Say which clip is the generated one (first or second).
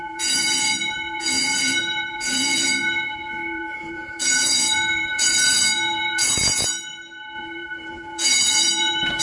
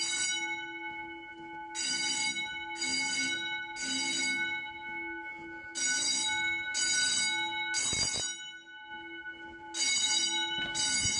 first